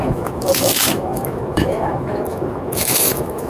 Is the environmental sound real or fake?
fake